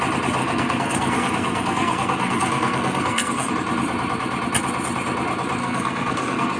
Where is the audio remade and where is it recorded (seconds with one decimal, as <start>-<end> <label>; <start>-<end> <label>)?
0.0-0.4 recorded; 0.4-3.5 remade; 3.5-5.6 recorded; 5.6-6.6 remade